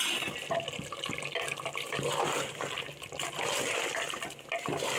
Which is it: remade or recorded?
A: recorded